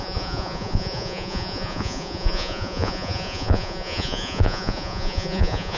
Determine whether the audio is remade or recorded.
remade